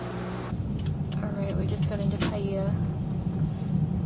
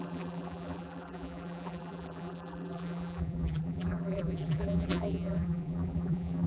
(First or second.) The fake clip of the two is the second